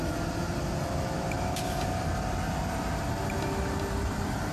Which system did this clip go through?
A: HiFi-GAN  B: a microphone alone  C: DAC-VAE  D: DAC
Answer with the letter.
B